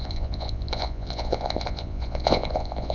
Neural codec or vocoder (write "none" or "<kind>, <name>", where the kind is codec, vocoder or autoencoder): vocoder, Vocos